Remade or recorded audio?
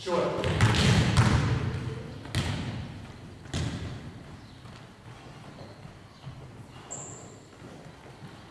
recorded